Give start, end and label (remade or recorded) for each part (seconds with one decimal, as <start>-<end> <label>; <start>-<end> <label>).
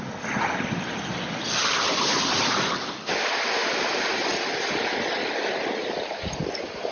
0.0-6.9 recorded